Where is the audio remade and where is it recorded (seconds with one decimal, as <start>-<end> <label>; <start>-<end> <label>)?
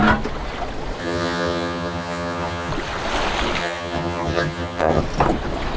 0.0-1.0 recorded; 1.0-2.7 remade; 2.7-3.6 recorded; 3.6-5.0 remade; 5.0-5.8 recorded